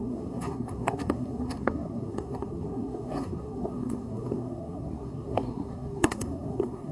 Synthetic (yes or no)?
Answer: yes